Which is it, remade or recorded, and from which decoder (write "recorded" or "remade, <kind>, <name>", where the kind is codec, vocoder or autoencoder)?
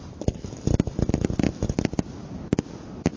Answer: recorded